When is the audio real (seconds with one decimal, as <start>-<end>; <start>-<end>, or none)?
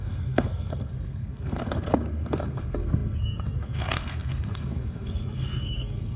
none